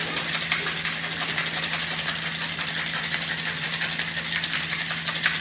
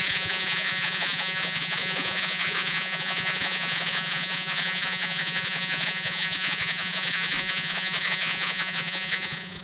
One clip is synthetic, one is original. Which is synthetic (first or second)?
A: second